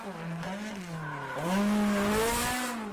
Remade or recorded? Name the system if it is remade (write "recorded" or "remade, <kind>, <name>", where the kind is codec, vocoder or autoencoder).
recorded